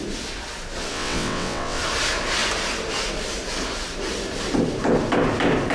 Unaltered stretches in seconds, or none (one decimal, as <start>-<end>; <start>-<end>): 0.0-0.9; 1.8-5.7